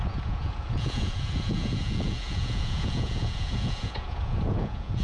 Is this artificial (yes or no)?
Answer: yes